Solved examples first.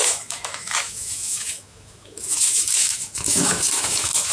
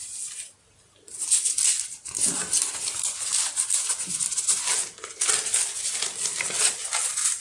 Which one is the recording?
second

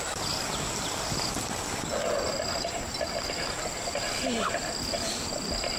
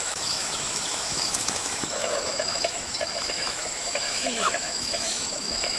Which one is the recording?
first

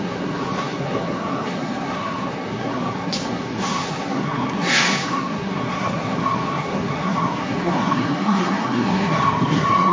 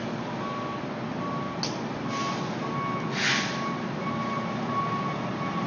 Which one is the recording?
second